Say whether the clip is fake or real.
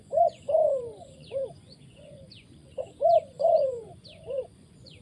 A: fake